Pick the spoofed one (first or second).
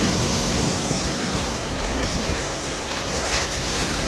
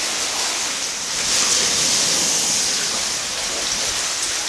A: first